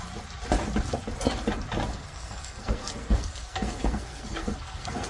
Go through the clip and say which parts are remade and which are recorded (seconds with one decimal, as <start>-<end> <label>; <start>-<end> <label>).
0.0-1.9 recorded; 1.9-5.1 remade